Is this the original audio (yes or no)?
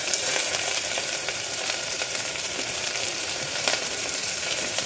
no